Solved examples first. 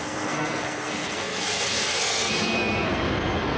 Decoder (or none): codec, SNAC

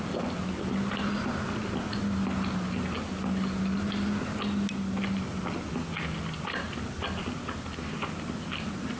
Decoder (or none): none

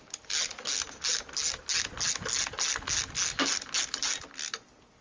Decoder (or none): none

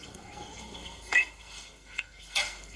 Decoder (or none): codec, SNAC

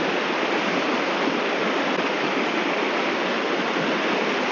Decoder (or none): none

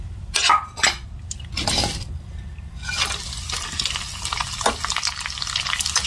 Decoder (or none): none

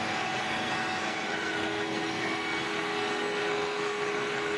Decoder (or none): codec, SNAC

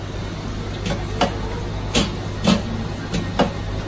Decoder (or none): none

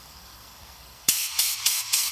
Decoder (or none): codec, SNAC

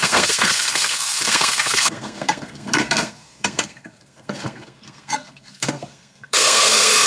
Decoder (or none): codec, SNAC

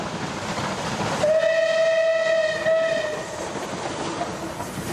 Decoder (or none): none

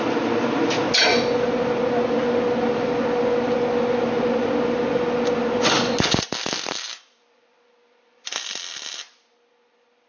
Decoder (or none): none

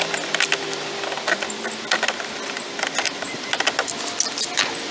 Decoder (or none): none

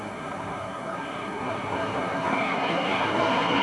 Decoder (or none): codec, SNAC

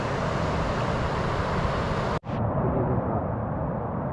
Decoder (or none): none